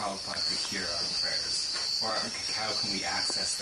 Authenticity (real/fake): real